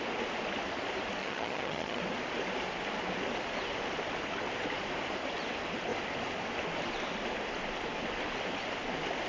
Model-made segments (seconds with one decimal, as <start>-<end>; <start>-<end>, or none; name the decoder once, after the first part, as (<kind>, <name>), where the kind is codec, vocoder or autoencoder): 1.2-2.0 (vocoder, HiFi-GAN)